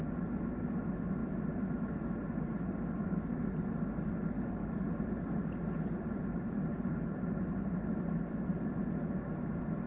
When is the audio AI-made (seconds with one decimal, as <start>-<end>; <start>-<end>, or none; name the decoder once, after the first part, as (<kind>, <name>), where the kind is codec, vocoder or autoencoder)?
none